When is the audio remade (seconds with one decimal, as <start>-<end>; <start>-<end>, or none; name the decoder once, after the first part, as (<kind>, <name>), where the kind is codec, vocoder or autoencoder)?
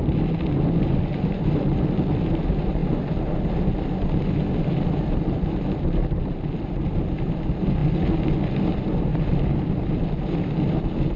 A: 7.8-8.3 (vocoder, BigVGAN v2); 9.1-9.8